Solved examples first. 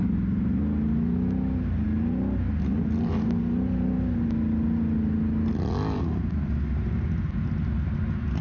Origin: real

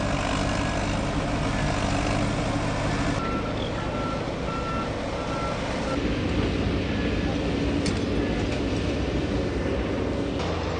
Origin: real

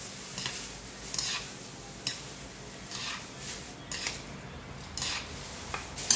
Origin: real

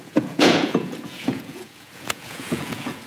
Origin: fake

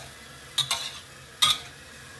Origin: real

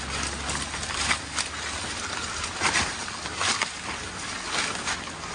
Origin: real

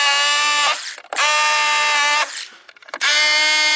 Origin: real